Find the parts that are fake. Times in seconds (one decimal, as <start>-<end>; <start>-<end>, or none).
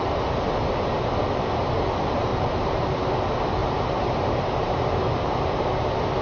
2.3-2.8; 3.6-5.7